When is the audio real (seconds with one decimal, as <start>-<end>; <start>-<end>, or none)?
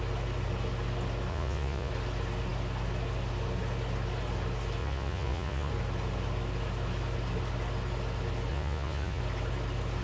0.0-1.3; 1.9-4.8; 5.7-8.5; 9.2-10.0